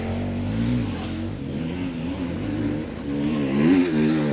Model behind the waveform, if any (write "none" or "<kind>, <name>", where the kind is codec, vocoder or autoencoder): none